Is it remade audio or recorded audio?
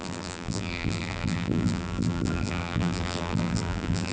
remade